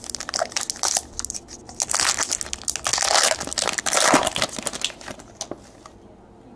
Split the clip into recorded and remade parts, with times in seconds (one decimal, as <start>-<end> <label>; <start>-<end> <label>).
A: 0.0-6.6 recorded